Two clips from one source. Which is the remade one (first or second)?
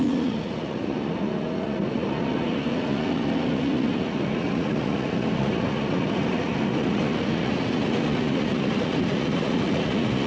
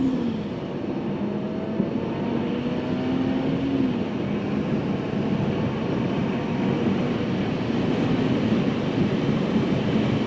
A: first